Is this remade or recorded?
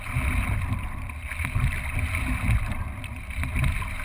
recorded